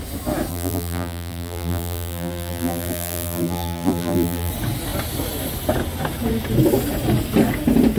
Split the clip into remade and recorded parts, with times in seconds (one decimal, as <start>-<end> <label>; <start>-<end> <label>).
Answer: 0.0-0.5 recorded; 0.5-4.5 remade; 4.5-8.0 recorded